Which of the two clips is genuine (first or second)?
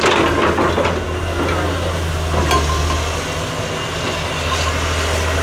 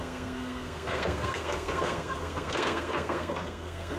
first